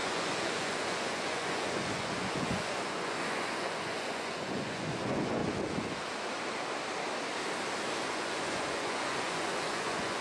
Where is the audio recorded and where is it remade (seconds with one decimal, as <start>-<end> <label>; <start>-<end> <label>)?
0.0-5.4 remade; 5.4-8.0 recorded; 8.0-10.2 remade